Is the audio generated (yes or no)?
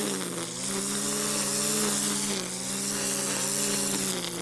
no